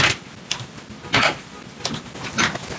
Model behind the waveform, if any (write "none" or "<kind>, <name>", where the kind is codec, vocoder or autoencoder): none